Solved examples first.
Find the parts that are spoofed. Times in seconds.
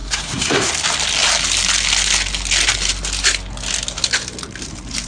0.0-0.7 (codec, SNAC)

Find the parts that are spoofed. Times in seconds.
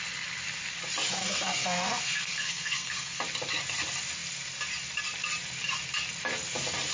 1.2-3.2 (codec, SNAC)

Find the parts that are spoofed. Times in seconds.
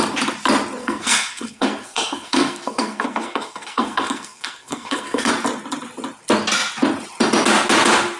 0.8-5.3 (codec, SNAC)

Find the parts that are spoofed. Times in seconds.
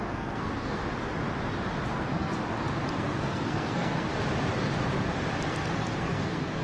0.0-0.8 (codec, SNAC); 1.9-2.3; 2.9-4.1; 5.5-6.6